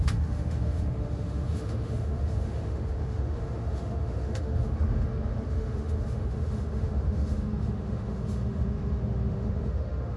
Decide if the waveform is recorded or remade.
remade